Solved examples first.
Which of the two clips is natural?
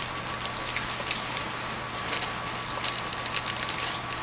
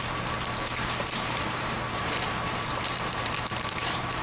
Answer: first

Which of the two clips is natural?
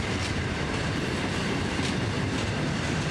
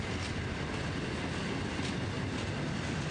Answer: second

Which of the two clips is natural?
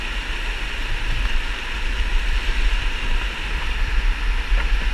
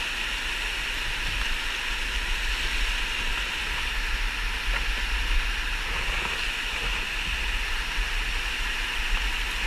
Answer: second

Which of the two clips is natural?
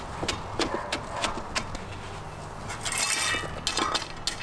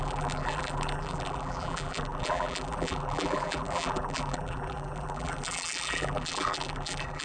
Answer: first